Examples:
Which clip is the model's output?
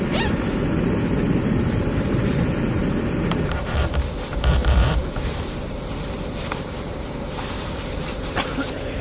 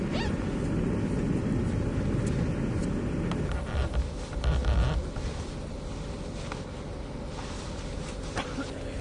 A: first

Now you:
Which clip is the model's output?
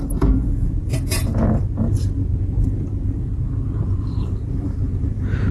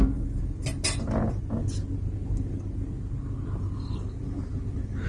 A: first